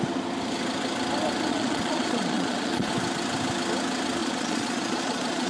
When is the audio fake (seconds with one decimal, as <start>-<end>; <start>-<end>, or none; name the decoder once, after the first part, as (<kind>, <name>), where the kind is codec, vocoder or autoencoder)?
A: 1.5-2.9 (vocoder, Vocos); 4.2-5.5